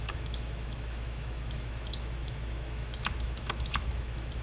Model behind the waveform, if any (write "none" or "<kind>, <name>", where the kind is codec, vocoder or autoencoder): autoencoder, DAC-VAE